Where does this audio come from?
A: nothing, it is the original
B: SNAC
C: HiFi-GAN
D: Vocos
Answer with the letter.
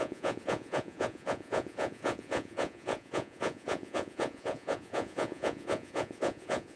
D